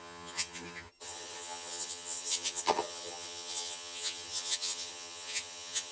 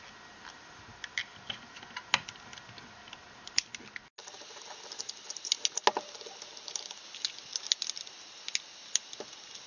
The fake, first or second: first